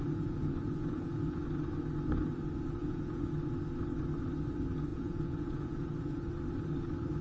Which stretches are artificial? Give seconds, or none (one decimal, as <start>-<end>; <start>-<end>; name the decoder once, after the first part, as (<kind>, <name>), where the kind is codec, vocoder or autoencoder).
0.0-1.4 (vocoder, Vocos); 2.8-3.3; 4.9-6.3